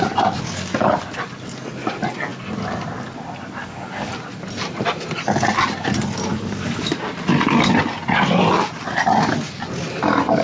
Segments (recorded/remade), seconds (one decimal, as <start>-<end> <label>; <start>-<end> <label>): 0.0-3.6 recorded; 3.6-4.1 remade; 4.1-6.3 recorded; 6.3-6.9 remade; 6.9-10.4 recorded